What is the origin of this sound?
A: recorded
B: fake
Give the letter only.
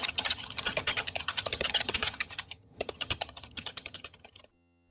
B